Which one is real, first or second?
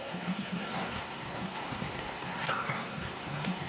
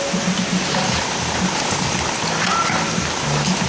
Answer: second